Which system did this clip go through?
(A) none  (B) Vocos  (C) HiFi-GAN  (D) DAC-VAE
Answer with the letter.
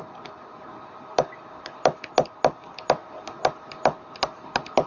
A